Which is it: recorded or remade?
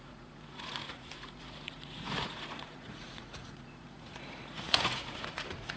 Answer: remade